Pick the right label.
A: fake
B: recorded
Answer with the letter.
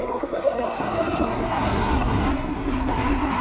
A